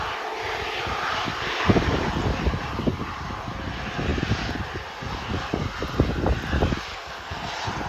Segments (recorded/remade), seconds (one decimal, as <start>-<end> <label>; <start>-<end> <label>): 0.0-6.9 recorded; 6.9-7.5 remade; 7.5-7.9 recorded